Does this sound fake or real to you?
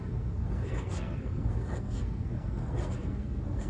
fake